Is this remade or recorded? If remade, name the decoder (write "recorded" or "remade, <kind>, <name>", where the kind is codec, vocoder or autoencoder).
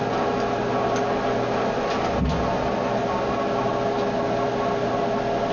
recorded